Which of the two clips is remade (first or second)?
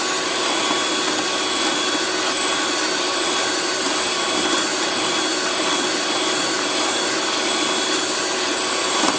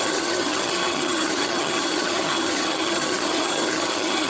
second